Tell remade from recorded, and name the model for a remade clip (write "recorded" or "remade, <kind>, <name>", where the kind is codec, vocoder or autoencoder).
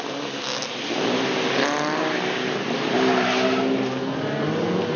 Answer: recorded